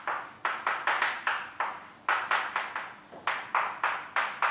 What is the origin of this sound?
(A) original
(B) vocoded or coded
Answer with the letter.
A